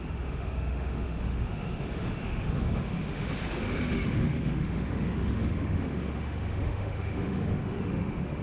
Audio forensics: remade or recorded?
remade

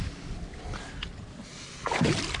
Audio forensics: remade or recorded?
recorded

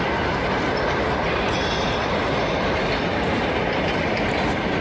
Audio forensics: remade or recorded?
recorded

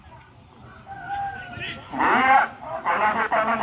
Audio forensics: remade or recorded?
recorded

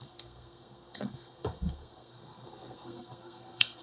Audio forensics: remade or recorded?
remade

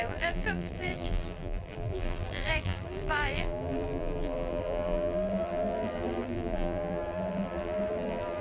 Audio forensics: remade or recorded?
remade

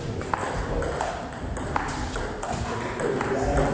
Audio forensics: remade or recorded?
recorded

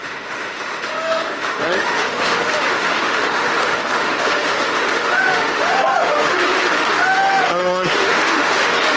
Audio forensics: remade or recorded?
remade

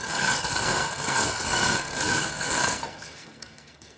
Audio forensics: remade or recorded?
remade